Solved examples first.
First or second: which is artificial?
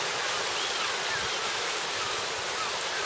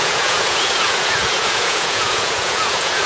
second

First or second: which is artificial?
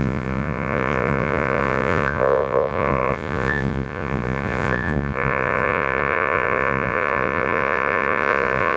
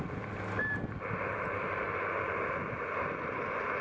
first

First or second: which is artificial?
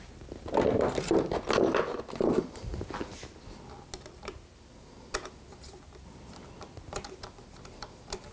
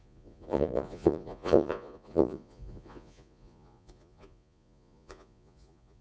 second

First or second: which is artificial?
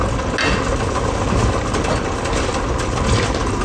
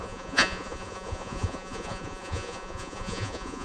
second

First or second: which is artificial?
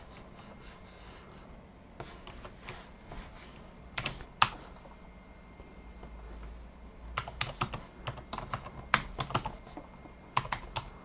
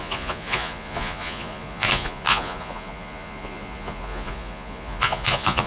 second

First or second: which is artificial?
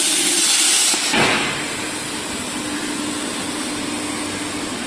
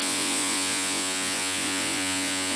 second